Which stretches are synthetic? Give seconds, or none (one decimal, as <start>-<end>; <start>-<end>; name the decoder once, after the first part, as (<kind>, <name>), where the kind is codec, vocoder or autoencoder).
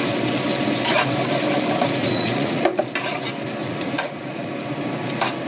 2.0-2.6 (vocoder, Vocos); 3.6-4.5